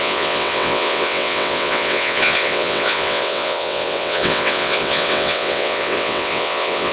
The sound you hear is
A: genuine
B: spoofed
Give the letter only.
B